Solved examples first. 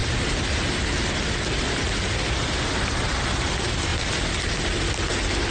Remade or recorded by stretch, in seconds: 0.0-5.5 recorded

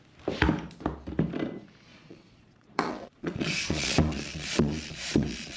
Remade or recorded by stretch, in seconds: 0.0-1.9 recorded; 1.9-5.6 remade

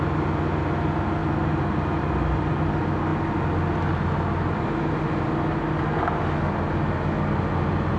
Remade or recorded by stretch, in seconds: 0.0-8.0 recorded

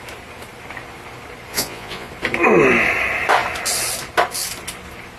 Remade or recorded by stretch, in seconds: 0.0-1.5 recorded; 1.5-2.1 remade; 2.1-5.2 recorded

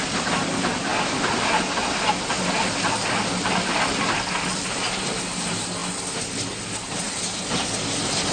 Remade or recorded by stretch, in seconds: 0.0-8.3 recorded

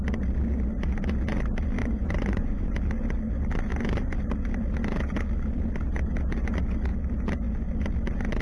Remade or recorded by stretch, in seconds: 0.0-1.8 recorded; 1.8-2.7 remade; 2.7-8.4 recorded